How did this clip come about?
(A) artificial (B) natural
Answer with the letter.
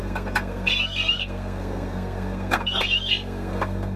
A